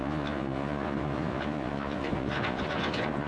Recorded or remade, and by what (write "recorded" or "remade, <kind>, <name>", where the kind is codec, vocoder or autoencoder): remade, vocoder, Vocos